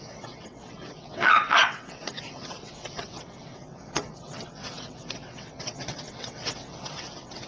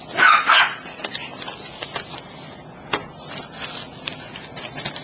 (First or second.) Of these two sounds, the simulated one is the first